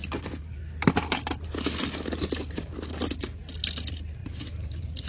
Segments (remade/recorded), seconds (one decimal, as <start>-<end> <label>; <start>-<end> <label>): 0.0-4.2 recorded; 4.2-5.1 remade